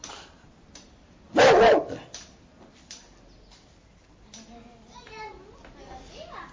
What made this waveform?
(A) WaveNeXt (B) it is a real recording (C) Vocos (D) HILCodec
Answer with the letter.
B